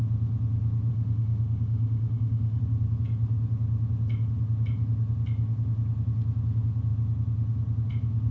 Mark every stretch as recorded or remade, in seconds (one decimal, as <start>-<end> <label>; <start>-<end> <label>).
0.0-0.9 recorded; 0.9-2.6 remade; 2.6-8.3 recorded